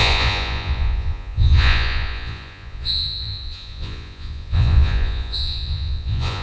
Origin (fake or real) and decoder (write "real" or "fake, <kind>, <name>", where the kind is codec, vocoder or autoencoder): fake, vocoder, Vocos